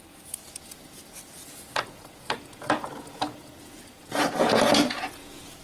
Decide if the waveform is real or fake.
fake